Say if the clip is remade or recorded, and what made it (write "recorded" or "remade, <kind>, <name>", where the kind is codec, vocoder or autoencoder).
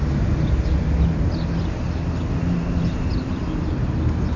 recorded